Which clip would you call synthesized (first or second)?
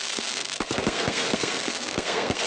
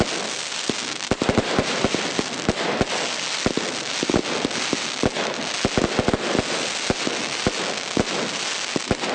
first